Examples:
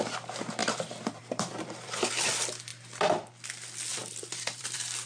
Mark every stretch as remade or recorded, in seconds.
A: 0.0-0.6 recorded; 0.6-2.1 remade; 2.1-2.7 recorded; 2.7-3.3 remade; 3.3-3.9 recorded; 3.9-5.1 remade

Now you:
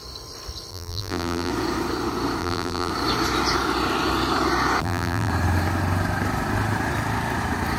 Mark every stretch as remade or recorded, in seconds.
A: 0.0-0.7 recorded; 0.7-1.5 remade; 1.5-2.4 recorded; 2.4-2.9 remade; 2.9-4.8 recorded; 4.8-5.3 remade; 5.3-7.8 recorded

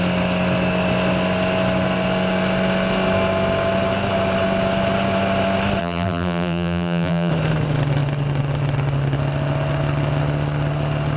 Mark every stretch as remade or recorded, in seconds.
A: 0.0-5.8 recorded; 5.8-7.3 remade; 7.3-11.2 recorded

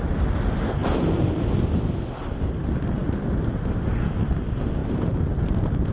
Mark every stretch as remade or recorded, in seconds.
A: 0.0-3.0 recorded; 3.0-3.8 remade; 3.8-5.9 recorded

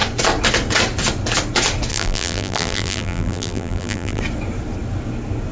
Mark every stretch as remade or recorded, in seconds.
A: 0.0-1.9 recorded; 1.9-4.2 remade; 4.2-5.5 recorded

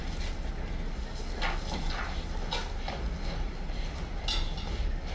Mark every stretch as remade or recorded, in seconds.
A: 0.0-5.1 recorded

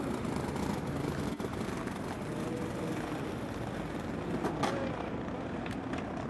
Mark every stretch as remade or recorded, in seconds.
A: 0.0-6.3 recorded

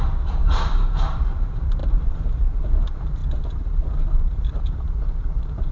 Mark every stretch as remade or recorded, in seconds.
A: 0.0-5.7 remade